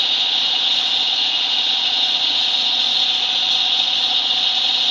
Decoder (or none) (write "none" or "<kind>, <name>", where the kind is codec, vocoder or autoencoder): vocoder, Vocos